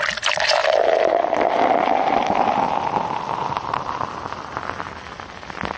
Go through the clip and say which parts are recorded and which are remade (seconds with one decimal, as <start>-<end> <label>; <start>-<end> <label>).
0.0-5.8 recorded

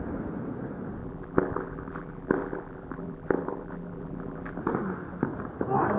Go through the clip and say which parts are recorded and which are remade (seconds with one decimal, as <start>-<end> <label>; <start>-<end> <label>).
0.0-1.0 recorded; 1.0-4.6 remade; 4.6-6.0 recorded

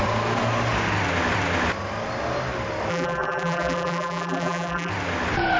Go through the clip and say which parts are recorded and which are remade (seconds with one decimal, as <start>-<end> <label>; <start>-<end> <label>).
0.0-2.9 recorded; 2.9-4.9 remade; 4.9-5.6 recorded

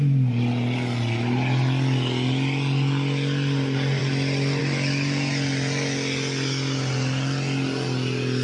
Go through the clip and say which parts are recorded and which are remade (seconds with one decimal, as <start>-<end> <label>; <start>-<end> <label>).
0.0-8.4 recorded

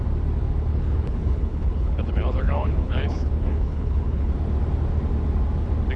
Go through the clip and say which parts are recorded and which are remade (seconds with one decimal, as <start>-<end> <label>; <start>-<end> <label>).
0.0-0.7 recorded; 0.7-4.3 remade; 4.3-6.0 recorded

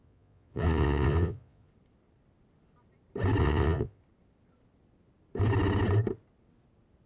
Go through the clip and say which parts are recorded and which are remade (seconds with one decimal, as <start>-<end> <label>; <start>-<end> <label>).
0.0-1.7 remade; 1.7-3.4 recorded; 3.4-4.0 remade; 4.0-7.1 recorded

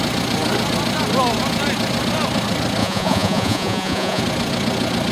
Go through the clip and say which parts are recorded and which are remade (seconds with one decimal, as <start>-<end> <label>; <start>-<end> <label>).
0.0-2.8 recorded; 2.8-4.2 remade; 4.2-5.1 recorded